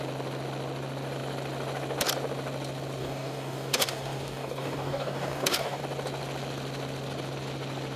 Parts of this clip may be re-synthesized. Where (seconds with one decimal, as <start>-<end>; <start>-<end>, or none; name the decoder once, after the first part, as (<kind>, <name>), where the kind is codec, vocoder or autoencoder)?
3.0-5.8 (codec, DAC)

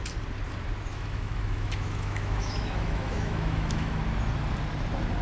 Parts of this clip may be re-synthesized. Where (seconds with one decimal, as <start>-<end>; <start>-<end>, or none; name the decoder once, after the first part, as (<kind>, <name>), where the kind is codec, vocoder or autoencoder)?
0.9-4.0 (autoencoder, DAC-VAE)

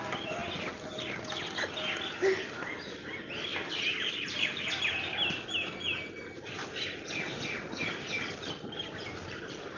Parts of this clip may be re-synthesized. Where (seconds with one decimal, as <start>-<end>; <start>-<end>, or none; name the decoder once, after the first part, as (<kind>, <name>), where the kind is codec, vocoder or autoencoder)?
none

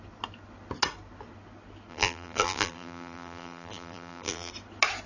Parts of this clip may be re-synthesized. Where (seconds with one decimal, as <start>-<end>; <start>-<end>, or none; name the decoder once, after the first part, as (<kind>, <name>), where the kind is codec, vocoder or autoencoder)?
1.9-4.5 (vocoder, BigVGAN v2)